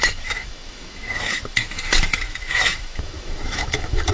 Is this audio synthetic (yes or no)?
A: yes